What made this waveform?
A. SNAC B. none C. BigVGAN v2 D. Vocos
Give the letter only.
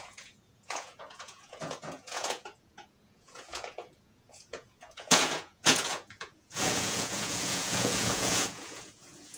D